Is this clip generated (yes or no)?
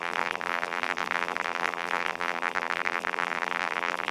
yes